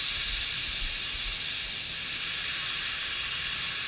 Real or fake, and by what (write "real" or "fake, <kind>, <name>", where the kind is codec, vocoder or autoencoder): real